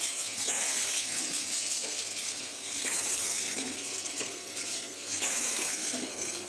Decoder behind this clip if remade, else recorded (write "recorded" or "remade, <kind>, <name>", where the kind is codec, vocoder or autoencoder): remade, codec, SNAC